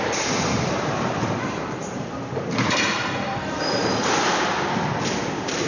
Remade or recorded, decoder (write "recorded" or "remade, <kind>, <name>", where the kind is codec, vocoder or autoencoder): remade, vocoder, BigVGAN v2